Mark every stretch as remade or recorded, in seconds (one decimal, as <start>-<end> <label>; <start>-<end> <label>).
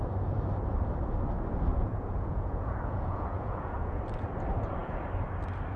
0.0-1.7 recorded; 1.7-4.0 remade; 4.0-5.8 recorded